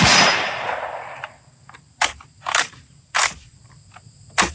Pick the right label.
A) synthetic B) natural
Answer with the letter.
B